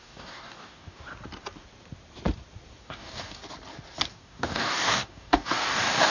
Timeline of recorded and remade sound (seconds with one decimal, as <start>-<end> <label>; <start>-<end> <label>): 0.0-1.1 remade; 1.1-2.8 recorded; 2.8-3.4 remade; 3.4-4.1 recorded; 4.1-6.1 remade